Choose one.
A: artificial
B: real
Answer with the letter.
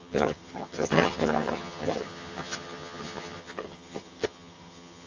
A